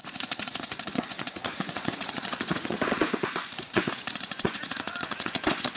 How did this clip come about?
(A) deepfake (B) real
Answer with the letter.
A